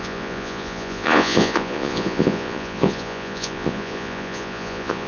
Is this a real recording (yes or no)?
no